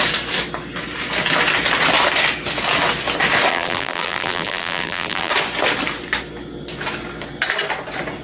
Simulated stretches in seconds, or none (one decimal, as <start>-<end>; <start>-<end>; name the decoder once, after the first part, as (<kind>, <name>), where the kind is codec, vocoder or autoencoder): 3.5-5.3 (vocoder, BigVGAN v2)